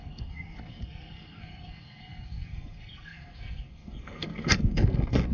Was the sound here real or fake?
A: fake